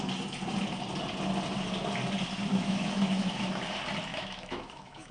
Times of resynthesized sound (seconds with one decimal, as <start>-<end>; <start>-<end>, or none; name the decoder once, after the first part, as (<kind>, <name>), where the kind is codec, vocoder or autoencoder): 2.5-3.6 (autoencoder, DAC-VAE); 4.1-5.1